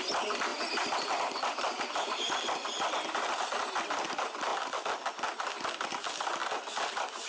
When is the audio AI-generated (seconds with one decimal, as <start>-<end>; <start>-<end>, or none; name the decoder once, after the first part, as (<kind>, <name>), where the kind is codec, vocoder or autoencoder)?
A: 0.5-4.1 (vocoder, BigVGAN v2); 4.5-5.1; 6.4-7.3